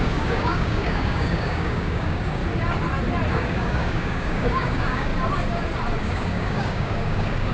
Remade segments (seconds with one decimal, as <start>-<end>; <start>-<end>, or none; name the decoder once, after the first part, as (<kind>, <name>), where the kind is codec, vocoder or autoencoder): 0.0-2.4 (codec, DAC); 3.3-5.1; 6.0-7.5